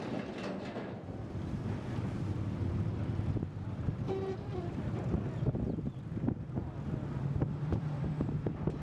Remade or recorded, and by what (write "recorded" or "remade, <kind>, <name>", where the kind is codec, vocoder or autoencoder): remade, vocoder, BigVGAN v2